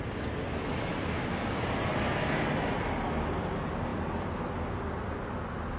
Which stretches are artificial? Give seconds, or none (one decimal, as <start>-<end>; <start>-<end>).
none